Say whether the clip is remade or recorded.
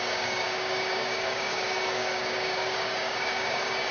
remade